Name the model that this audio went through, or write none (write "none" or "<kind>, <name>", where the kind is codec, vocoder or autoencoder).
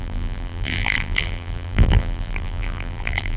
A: vocoder, BigVGAN v2